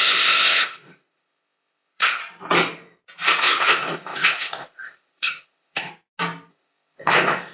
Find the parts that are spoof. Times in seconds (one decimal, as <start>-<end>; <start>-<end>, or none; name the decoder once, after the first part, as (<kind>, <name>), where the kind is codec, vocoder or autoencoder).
0.0-2.2 (codec, ZipCodec); 3.4-5.9; 6.5-7.5